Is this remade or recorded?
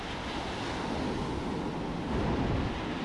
recorded